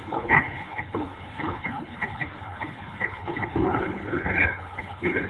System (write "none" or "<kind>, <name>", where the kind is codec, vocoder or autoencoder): codec, HILCodec